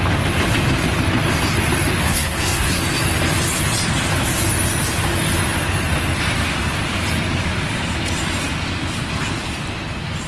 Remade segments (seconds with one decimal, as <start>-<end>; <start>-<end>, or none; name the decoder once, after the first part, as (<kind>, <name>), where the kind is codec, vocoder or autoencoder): 2.0-2.8 (codec, SNAC)